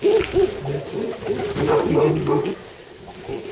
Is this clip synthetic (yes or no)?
no